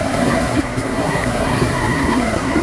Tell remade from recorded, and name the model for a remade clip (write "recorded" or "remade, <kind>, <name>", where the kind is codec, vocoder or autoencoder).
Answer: remade, codec, SNAC